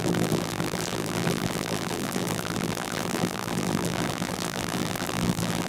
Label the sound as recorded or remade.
remade